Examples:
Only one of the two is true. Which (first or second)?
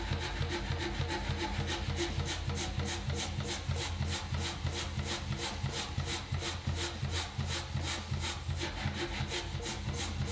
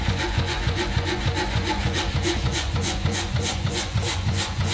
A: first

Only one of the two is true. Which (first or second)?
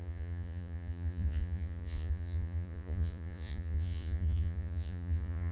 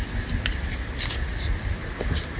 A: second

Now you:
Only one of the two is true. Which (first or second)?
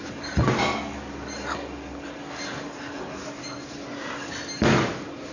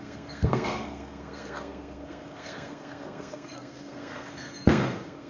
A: first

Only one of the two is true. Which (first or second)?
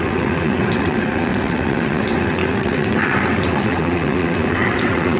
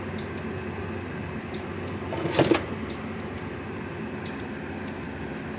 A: second